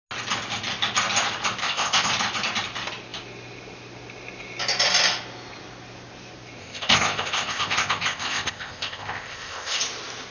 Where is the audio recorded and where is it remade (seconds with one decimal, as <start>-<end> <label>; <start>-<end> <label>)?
0.0-1.6 recorded; 1.6-2.1 remade; 2.1-6.6 recorded; 6.6-9.8 remade; 9.8-10.3 recorded